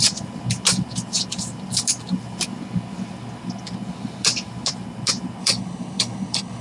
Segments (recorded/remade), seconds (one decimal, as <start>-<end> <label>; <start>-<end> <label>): 0.0-5.4 recorded; 5.4-6.6 remade